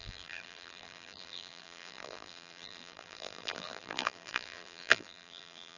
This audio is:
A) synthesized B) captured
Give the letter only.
A